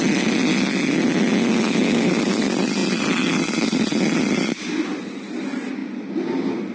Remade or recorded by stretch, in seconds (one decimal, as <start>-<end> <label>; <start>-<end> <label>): 0.0-6.7 recorded